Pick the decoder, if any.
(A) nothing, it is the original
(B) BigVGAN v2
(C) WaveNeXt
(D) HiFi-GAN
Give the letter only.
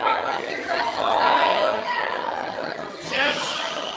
D